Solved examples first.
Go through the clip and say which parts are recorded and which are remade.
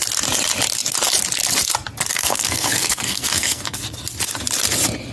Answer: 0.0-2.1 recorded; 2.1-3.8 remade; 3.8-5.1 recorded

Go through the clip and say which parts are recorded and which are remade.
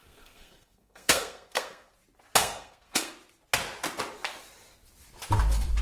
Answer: 0.0-1.9 remade; 1.9-2.4 recorded; 2.4-3.1 remade; 3.1-5.8 recorded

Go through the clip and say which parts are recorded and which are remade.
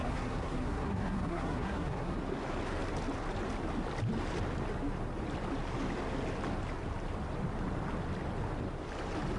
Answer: 0.0-2.2 remade; 2.2-9.4 recorded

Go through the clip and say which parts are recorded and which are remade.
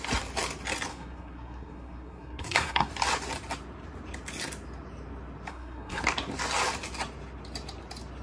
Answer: 0.0-0.9 recorded; 0.9-2.9 remade; 2.9-5.5 recorded; 5.5-6.0 remade; 6.0-8.2 recorded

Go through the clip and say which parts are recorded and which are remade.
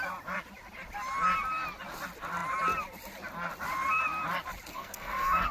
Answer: 0.0-4.7 recorded; 4.7-5.5 remade